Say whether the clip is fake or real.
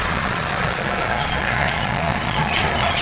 fake